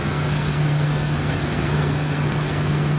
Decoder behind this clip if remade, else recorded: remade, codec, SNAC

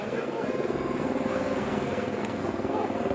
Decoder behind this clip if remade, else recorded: remade, codec, SNAC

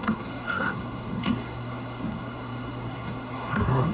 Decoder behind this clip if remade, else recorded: remade, codec, SNAC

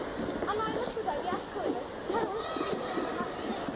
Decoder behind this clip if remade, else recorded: recorded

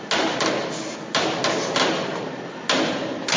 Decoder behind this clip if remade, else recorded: recorded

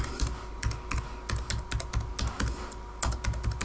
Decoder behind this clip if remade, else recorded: recorded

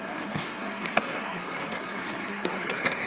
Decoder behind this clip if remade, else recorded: remade, codec, SNAC